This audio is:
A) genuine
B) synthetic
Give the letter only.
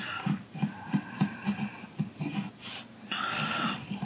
A